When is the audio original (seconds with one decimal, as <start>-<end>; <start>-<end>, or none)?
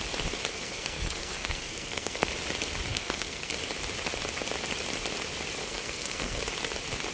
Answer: 0.0-0.5; 2.3-2.9; 3.5-5.6; 6.4-7.1